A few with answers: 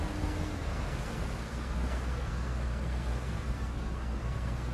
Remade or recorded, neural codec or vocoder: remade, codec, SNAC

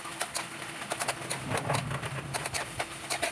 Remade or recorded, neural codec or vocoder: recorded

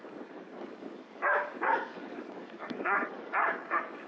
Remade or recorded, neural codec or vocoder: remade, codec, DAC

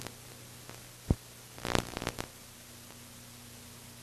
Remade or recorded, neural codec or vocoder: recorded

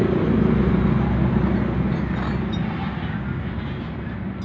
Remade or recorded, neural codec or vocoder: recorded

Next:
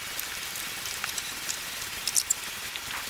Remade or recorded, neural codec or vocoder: recorded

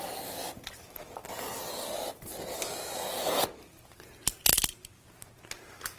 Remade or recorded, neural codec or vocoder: recorded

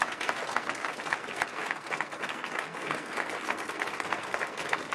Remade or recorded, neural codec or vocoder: remade, codec, SNAC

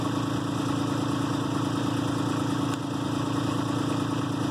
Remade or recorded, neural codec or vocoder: recorded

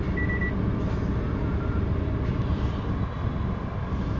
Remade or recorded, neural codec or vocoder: recorded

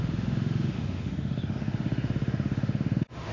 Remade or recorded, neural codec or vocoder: remade, autoencoder, DAC-VAE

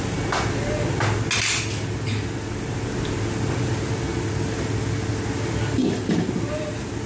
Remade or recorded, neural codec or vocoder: recorded